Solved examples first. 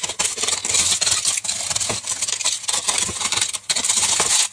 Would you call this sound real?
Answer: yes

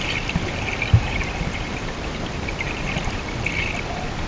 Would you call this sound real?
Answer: yes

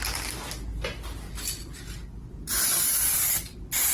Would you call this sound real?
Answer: yes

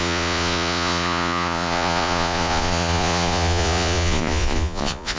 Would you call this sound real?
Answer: no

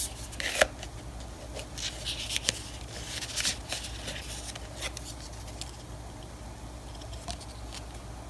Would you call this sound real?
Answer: yes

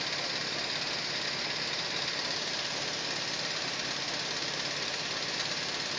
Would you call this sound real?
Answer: yes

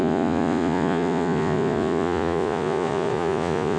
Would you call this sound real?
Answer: no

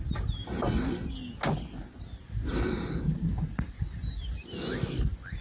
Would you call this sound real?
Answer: yes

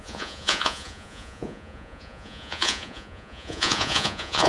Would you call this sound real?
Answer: no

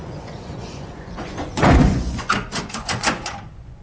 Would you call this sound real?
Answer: no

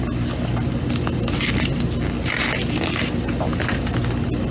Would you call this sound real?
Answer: yes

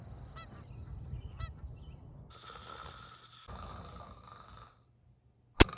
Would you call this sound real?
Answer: yes